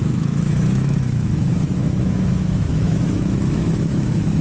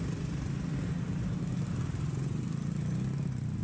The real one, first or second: second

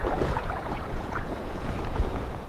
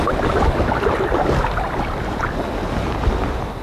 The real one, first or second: second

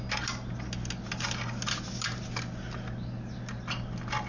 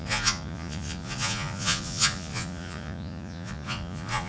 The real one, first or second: first